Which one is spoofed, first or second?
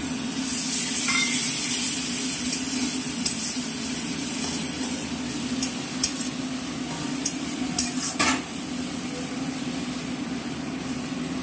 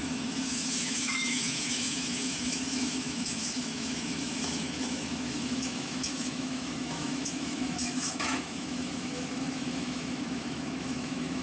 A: second